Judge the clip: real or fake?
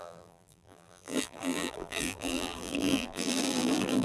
fake